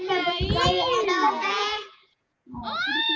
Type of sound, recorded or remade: remade